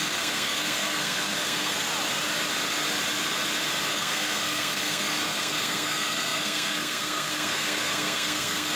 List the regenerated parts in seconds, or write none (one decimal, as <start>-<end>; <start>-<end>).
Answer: 0.0-1.9; 3.9-8.8